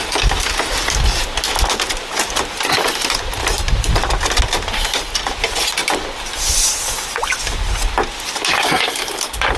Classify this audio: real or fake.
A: real